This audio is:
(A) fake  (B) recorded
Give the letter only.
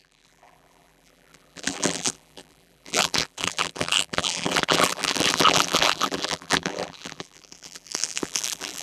A